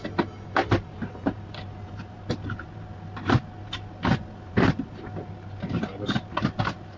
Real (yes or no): yes